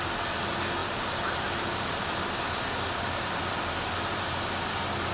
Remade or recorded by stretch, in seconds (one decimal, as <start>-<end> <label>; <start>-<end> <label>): 0.0-0.8 recorded; 0.8-3.9 remade; 3.9-5.1 recorded